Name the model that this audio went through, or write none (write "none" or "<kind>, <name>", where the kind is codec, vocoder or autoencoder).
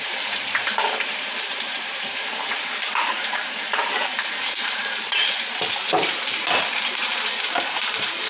vocoder, BigVGAN v2